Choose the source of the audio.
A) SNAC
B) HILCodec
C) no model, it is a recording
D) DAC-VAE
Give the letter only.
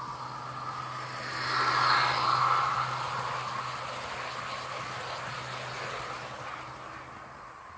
C